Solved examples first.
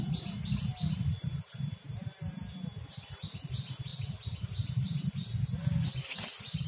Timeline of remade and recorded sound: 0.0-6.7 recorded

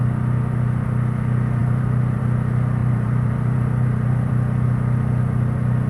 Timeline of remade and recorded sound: 0.0-1.6 recorded; 1.6-2.2 remade; 2.2-2.8 recorded; 2.8-4.3 remade; 4.3-5.9 recorded

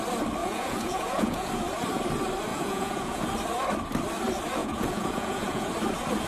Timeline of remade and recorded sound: 0.0-0.4 recorded; 0.4-1.5 remade; 1.5-2.5 recorded; 2.5-3.3 remade; 3.3-4.6 recorded; 4.6-5.7 remade; 5.7-6.3 recorded

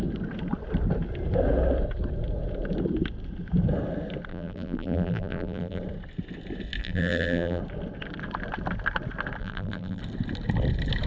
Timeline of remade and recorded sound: 0.0-4.3 recorded; 4.3-5.8 remade; 5.8-6.8 recorded; 6.8-7.6 remade; 7.6-9.4 recorded; 9.4-10.0 remade; 10.0-11.1 recorded

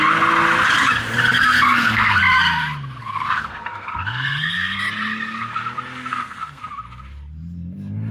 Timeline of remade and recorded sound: 0.0-1.3 recorded; 1.3-2.2 remade; 2.2-3.0 recorded; 3.0-4.8 remade; 4.8-6.1 recorded; 6.1-6.6 remade; 6.6-8.1 recorded

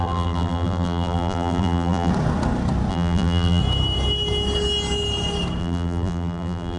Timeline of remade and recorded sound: 0.0-2.1 remade; 2.1-2.9 recorded; 2.9-3.6 remade; 3.6-5.6 recorded; 5.6-6.8 remade

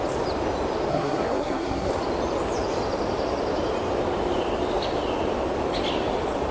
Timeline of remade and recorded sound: 0.0-0.9 recorded; 0.9-1.9 remade; 1.9-6.5 recorded

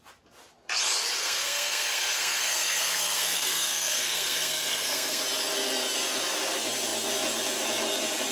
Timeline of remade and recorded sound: 0.0-1.2 recorded; 1.2-5.2 remade; 5.2-8.3 recorded